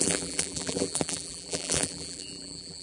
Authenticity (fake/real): fake